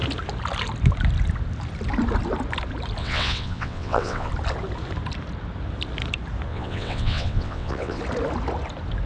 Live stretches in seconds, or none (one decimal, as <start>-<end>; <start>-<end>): 0.0-3.0; 4.3-6.5; 8.0-9.1